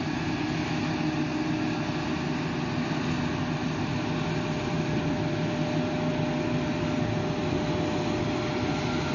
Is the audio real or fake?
real